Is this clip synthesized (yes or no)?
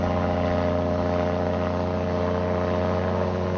no